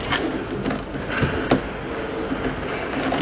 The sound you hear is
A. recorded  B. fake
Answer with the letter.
A